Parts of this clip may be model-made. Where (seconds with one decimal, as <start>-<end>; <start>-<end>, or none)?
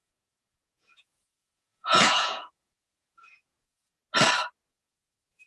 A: 0.0-4.0; 4.7-5.5